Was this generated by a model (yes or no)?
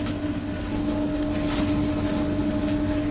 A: no